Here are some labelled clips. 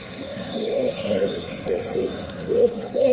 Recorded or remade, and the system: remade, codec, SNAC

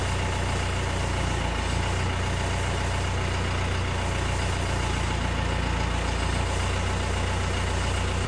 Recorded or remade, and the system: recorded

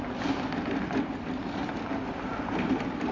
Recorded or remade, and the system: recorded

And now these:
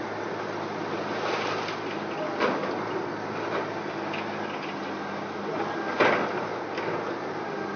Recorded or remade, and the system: recorded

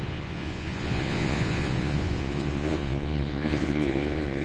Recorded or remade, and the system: remade, vocoder, Vocos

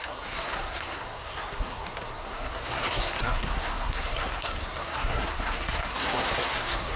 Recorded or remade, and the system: remade, codec, SNAC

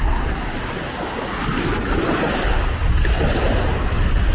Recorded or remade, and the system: recorded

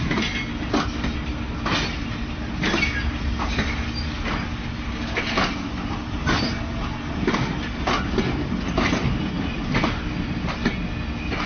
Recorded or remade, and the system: recorded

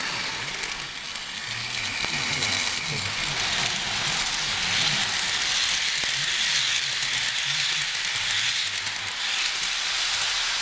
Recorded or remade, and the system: recorded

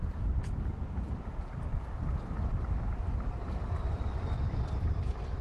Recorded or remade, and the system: recorded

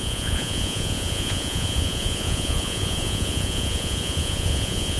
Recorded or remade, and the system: remade, vocoder, Vocos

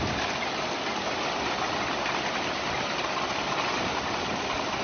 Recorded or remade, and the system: recorded